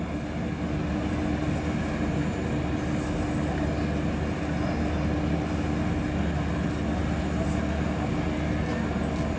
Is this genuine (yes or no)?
yes